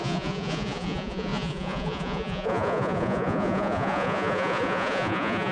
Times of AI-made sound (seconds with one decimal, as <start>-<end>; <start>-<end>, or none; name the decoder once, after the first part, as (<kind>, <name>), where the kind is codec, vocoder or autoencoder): 0.0-5.5 (vocoder, Vocos)